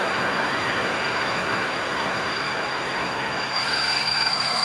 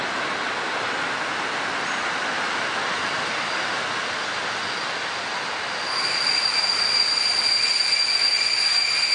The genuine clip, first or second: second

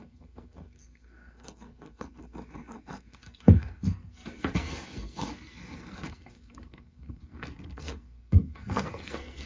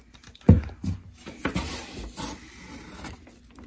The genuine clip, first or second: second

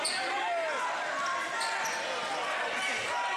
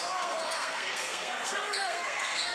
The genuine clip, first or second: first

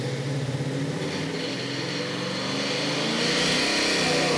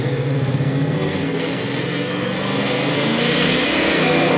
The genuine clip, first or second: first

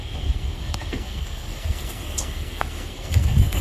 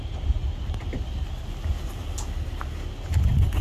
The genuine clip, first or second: second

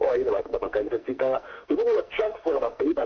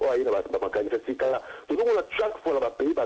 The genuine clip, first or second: second